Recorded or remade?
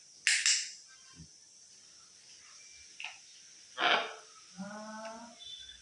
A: recorded